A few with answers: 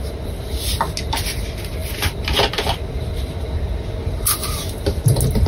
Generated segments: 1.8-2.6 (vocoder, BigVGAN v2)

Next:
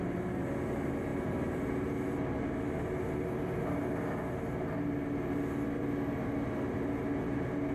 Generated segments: none